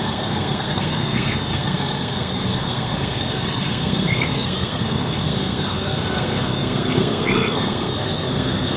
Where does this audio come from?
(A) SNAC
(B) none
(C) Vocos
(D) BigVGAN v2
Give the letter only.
A